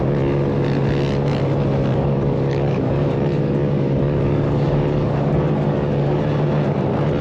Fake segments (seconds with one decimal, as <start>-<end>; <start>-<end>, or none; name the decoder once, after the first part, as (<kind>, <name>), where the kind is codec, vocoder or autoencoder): 1.9-6.2 (codec, DAC)